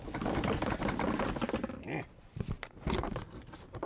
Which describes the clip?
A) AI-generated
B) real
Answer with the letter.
B